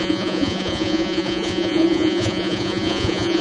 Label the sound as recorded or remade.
remade